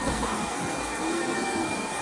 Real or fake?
fake